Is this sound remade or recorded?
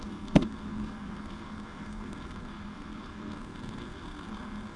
remade